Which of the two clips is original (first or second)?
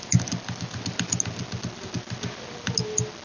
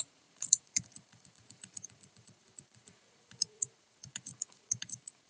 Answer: first